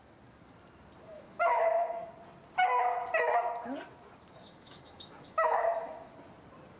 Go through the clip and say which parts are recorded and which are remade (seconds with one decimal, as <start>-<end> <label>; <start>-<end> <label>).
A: 0.0-1.1 recorded; 1.1-2.1 remade; 2.1-4.4 recorded; 4.4-6.1 remade; 6.1-6.8 recorded